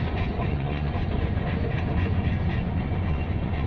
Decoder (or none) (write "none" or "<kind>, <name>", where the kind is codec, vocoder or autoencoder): vocoder, Vocos